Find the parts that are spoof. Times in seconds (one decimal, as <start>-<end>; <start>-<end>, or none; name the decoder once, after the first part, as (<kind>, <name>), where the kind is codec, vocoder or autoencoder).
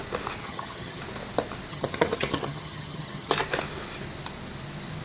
0.4-1.0 (vocoder, HiFi-GAN); 1.7-3.3